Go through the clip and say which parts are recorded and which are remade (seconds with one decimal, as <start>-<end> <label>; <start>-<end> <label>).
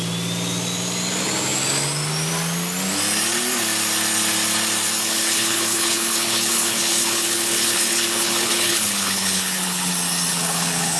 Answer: 0.0-5.0 recorded; 5.0-9.9 remade; 9.9-10.3 recorded; 10.3-11.0 remade